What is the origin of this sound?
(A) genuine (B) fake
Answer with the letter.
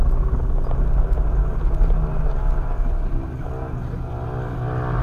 A